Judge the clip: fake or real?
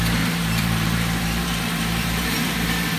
fake